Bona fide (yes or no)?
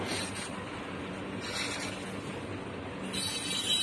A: yes